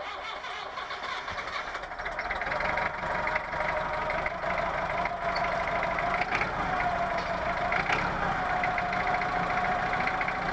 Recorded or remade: recorded